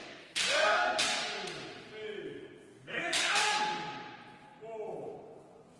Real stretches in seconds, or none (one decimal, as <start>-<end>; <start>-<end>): 1.2-2.7; 3.6-5.8